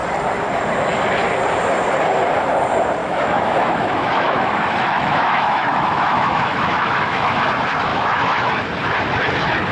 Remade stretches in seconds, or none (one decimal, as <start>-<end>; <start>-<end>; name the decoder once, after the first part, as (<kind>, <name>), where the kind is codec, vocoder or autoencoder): 3.0-7.5 (autoencoder, DAC-VAE); 7.9-8.5